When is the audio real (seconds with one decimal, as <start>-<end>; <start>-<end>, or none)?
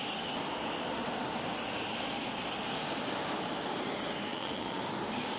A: 0.0-4.3; 4.8-5.4